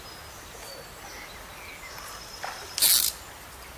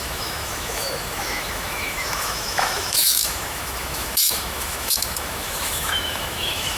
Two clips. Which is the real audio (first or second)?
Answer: first